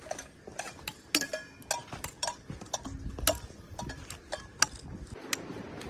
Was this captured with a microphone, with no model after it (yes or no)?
yes